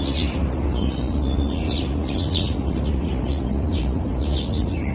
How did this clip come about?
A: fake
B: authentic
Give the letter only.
A